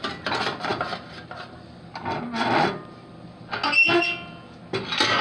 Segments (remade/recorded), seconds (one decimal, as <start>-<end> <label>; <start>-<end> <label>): 0.0-3.8 recorded; 3.8-4.6 remade; 4.6-5.2 recorded